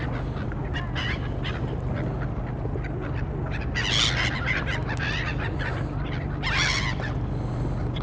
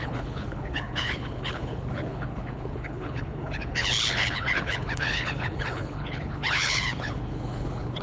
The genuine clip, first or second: first